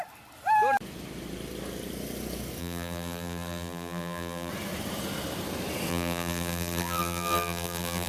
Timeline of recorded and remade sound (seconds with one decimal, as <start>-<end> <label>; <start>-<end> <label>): 0.0-2.6 recorded; 2.6-4.5 remade; 4.5-5.9 recorded; 5.9-8.1 remade